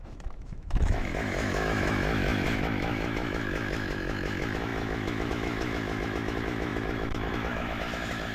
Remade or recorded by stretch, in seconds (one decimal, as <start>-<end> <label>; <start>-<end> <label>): 0.0-8.3 remade